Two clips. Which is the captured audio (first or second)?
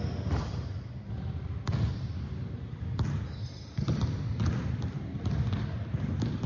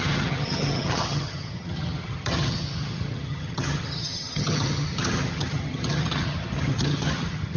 first